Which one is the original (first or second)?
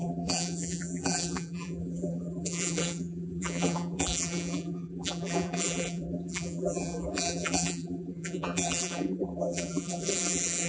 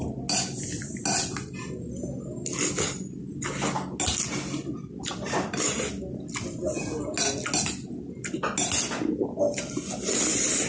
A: second